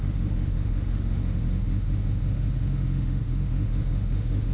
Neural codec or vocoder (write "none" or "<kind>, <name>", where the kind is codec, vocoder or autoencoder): autoencoder, DAC-VAE